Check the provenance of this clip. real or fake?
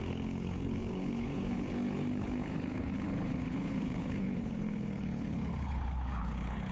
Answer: fake